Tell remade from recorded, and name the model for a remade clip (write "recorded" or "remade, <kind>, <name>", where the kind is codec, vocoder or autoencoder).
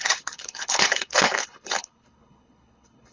remade, codec, HILCodec